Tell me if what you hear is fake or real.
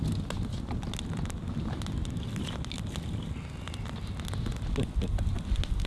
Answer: real